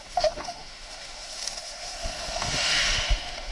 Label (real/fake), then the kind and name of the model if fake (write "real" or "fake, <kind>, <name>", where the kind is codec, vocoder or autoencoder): fake, autoencoder, DAC-VAE